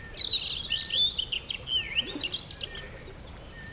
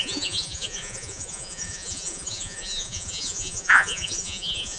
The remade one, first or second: second